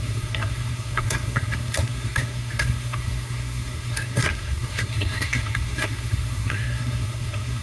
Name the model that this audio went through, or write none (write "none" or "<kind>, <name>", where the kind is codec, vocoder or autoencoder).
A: codec, SNAC